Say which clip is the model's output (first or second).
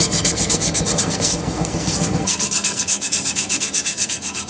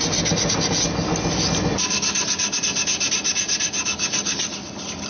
first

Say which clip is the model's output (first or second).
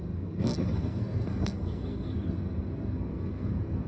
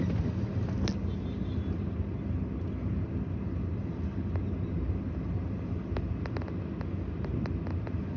first